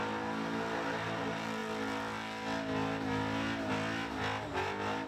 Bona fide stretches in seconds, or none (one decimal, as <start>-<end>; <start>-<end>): 0.0-5.1